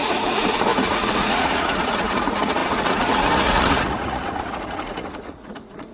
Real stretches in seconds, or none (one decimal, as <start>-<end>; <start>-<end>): none